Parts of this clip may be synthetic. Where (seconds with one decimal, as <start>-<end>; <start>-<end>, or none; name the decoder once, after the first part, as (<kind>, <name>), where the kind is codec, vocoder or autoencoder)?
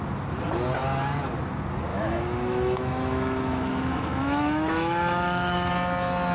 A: 1.9-5.7 (autoencoder, DAC-VAE)